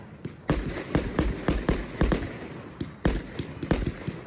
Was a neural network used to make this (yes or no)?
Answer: no